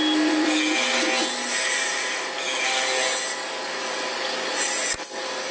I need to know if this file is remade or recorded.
recorded